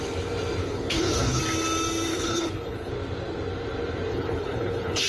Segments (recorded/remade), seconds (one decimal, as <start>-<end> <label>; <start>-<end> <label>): 0.0-0.6 recorded; 0.6-1.4 remade; 1.4-2.1 recorded; 2.1-2.9 remade; 2.9-4.1 recorded; 4.1-5.1 remade